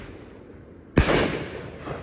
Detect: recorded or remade recorded